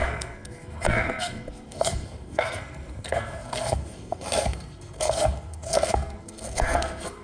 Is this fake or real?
fake